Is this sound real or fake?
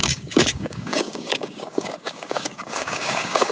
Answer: fake